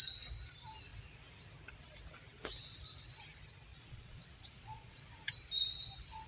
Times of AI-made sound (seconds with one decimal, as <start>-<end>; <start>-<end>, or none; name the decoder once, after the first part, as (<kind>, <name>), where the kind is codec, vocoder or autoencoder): 3.7-5.0 (vocoder, Vocos)